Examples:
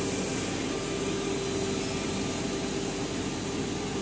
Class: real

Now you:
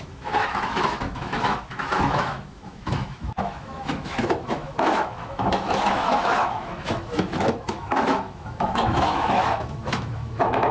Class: fake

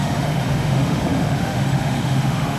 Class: fake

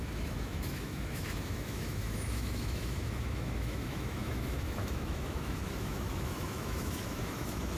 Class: fake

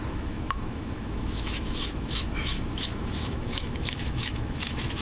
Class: fake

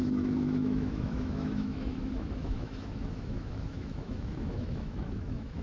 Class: fake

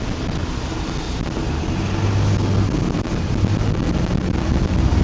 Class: real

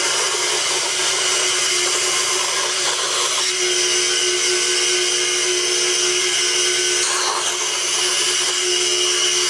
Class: real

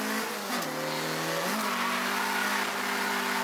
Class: real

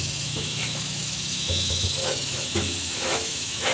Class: fake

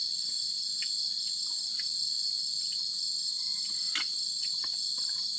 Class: real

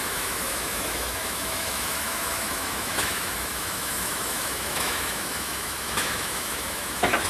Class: fake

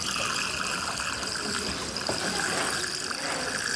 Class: real